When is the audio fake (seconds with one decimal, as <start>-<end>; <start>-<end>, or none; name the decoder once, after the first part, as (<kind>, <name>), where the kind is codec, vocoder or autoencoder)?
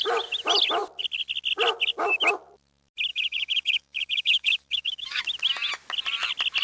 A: 3.1-5.2 (codec, DAC)